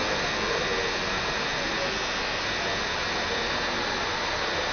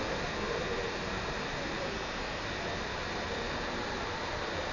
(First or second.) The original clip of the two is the first